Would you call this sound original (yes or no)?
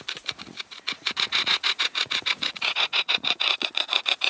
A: no